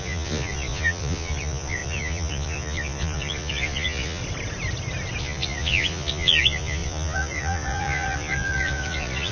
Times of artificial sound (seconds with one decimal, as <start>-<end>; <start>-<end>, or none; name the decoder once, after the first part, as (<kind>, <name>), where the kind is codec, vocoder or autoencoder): 0.0-4.2 (vocoder, Vocos); 5.2-9.3